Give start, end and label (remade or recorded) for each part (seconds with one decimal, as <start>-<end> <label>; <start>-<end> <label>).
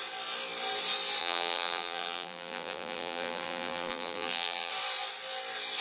0.0-1.2 recorded; 1.2-4.7 remade; 4.7-5.8 recorded